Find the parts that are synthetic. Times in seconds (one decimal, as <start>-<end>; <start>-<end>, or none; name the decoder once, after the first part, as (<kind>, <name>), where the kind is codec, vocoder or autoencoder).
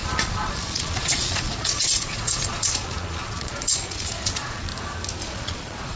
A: 0.0-4.7 (vocoder, Vocos); 5.2-6.0